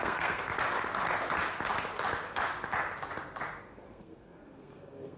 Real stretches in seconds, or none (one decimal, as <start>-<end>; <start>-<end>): 0.5-3.6